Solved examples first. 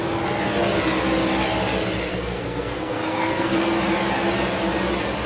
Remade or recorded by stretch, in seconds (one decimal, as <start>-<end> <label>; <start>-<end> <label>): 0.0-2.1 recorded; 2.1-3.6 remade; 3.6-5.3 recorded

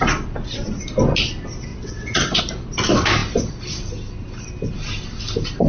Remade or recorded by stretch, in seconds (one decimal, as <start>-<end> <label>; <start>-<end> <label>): 0.0-1.7 recorded; 1.7-2.4 remade; 2.4-5.7 recorded

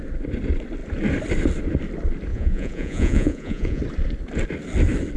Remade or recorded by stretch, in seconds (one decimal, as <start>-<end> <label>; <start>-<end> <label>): 0.0-2.3 recorded; 2.3-3.8 remade; 3.8-5.2 recorded

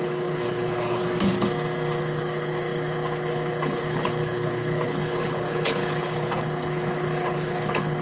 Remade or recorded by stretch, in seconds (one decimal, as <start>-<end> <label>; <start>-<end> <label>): 0.0-1.0 remade; 1.0-2.0 recorded; 2.0-8.0 remade

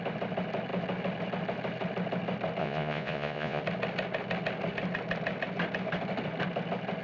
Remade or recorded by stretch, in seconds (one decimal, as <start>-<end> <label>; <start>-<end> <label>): 0.0-2.6 recorded; 2.6-3.6 remade; 3.6-7.0 recorded

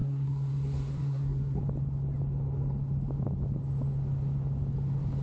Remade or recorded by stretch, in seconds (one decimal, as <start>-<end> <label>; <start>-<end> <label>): 0.0-1.6 remade; 1.6-5.2 recorded